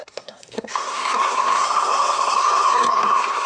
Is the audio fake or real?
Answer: fake